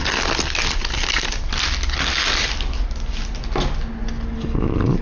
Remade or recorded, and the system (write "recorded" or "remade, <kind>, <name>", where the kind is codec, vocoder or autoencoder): recorded